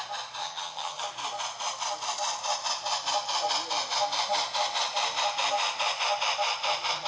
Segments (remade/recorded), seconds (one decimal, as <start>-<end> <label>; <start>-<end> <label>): 0.0-0.4 recorded; 0.4-1.0 remade; 1.0-7.1 recorded